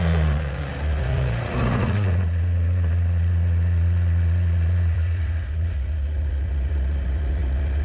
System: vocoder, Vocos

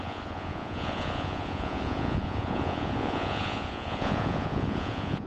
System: vocoder, Vocos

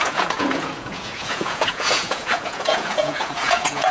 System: vocoder, Vocos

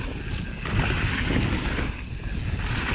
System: none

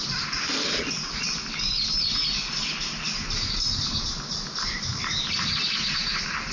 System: none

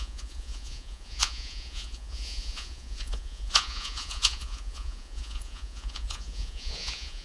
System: vocoder, Vocos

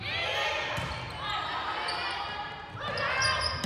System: none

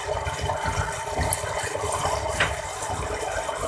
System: none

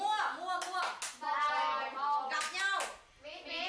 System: none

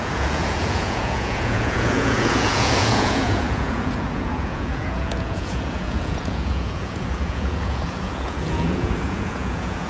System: vocoder, Vocos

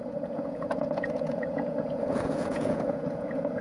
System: vocoder, Vocos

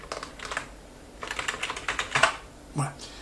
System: none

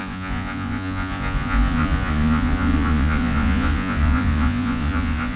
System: vocoder, Vocos